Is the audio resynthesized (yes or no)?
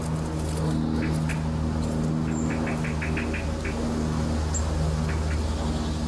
no